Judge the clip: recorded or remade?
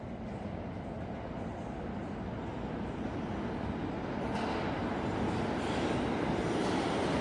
recorded